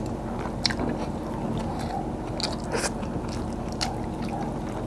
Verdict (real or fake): real